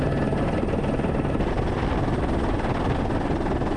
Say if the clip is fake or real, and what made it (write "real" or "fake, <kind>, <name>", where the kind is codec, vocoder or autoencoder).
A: real